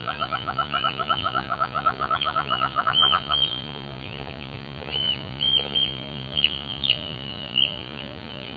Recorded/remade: remade